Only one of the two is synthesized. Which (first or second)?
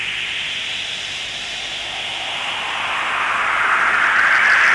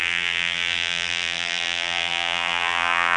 second